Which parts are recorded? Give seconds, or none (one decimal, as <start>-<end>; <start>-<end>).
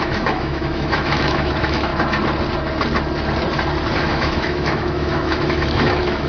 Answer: 1.9-4.0